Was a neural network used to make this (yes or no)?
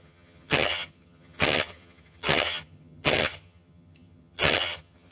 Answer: yes